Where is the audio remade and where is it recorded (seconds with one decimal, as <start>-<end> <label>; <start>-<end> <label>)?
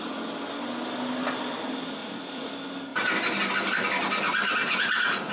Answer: 0.0-2.0 recorded; 2.0-2.5 remade; 2.5-4.6 recorded; 4.6-5.3 remade